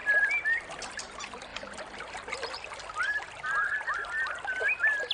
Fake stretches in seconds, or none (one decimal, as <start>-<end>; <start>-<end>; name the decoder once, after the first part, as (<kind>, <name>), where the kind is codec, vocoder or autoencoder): 1.5-3.0 (vocoder, BigVGAN v2)